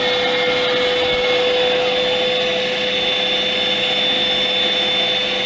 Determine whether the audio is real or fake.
real